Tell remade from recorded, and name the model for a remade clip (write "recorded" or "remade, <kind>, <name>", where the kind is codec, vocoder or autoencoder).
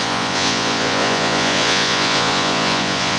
remade, vocoder, Vocos